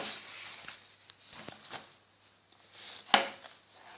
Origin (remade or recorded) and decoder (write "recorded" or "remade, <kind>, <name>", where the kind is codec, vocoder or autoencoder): recorded